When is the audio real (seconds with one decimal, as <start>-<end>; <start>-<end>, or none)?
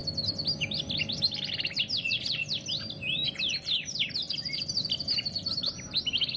0.0-2.0; 2.4-6.4